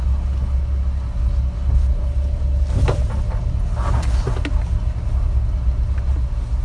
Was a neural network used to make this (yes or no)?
no